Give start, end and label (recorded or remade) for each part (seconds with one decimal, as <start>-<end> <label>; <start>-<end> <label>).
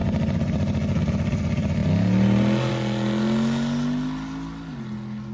0.0-1.0 remade; 1.0-5.3 recorded